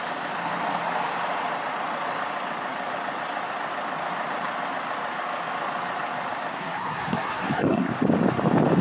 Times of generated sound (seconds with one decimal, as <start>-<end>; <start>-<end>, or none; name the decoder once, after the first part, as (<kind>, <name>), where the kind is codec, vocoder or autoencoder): 6.5-7.9 (codec, SNAC)